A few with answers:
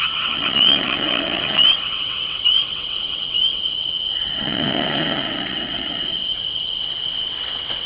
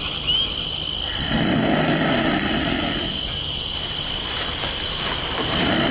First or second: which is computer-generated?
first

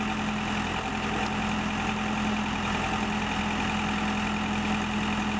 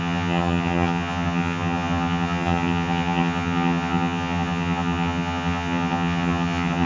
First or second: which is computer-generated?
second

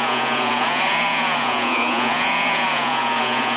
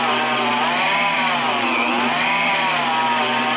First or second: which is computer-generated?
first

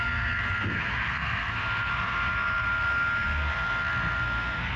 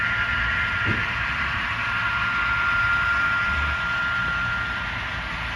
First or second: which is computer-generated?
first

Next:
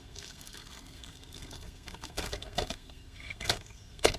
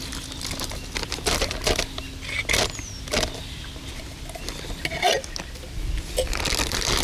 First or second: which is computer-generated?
first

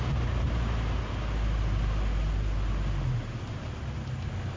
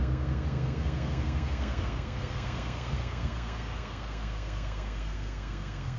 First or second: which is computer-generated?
second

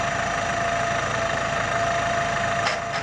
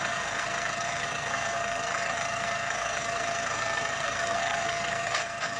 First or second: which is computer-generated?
second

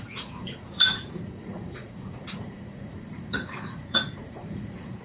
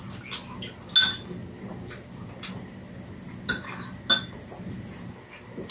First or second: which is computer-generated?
first